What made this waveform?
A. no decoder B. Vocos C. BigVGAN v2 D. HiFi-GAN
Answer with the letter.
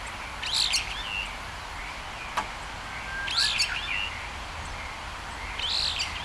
A